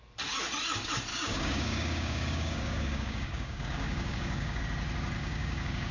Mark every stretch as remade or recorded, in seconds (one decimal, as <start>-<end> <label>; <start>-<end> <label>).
0.0-1.1 recorded; 1.1-4.6 remade; 4.6-5.2 recorded; 5.2-5.9 remade